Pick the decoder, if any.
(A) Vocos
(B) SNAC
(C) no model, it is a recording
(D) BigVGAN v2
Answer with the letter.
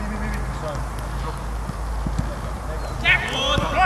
C